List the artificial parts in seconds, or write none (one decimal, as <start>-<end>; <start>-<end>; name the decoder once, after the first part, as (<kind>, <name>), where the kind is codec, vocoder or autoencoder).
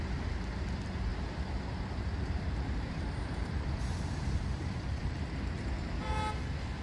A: 1.1-5.2 (vocoder, BigVGAN v2)